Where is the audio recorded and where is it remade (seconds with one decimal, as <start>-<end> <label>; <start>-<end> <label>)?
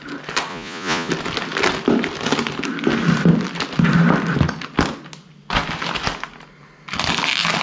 0.0-0.5 recorded; 0.5-1.1 remade; 1.1-7.6 recorded